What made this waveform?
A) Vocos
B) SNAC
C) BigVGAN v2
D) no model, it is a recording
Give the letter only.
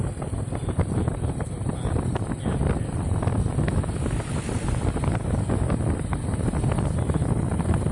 D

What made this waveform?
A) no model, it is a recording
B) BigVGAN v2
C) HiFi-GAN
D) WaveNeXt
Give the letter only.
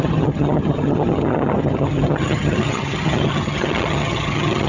C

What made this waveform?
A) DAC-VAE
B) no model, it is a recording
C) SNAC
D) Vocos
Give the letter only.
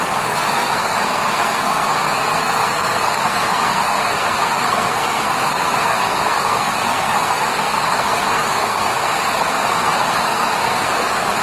C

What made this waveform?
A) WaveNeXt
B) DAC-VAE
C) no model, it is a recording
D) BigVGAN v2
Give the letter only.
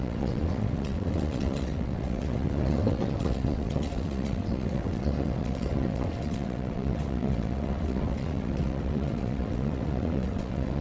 A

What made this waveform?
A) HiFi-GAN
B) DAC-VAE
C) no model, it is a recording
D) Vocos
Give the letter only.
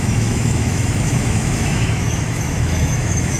B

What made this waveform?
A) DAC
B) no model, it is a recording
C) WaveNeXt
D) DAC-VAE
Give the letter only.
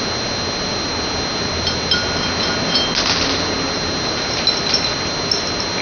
B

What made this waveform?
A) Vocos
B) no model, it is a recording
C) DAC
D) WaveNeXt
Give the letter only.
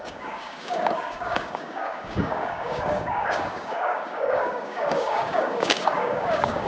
C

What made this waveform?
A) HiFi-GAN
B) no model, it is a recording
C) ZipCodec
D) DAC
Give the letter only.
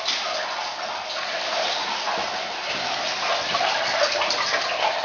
B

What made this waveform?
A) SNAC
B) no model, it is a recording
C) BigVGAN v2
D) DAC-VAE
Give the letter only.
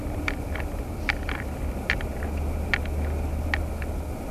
B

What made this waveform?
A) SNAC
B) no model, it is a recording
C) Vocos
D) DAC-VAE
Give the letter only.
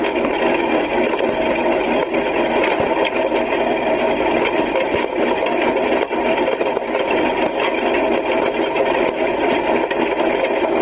B